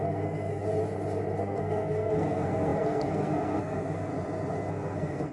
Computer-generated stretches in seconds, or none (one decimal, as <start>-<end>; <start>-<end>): 0.0-0.6; 1.4-4.1; 4.7-5.3